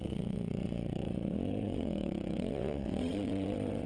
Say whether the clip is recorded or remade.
remade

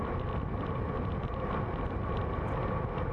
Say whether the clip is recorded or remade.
recorded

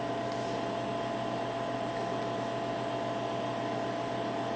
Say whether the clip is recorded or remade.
recorded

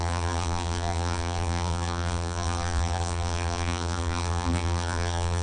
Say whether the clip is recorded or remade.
remade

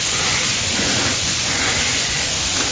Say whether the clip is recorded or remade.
remade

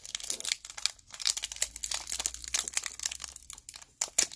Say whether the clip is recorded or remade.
recorded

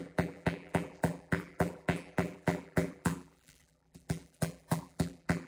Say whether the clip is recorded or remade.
remade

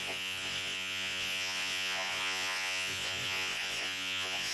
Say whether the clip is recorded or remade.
remade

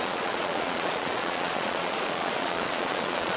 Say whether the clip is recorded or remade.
remade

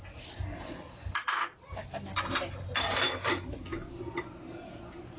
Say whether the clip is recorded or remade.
recorded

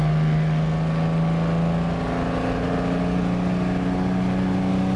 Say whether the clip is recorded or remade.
recorded